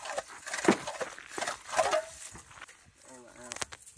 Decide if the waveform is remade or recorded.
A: recorded